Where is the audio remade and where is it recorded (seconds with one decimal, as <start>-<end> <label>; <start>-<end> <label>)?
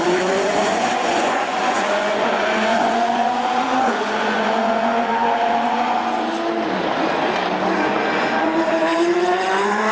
0.0-6.3 remade; 6.3-7.8 recorded; 7.8-9.9 remade